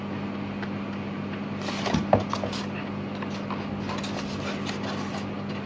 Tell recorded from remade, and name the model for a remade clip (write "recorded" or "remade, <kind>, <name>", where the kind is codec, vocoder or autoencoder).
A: recorded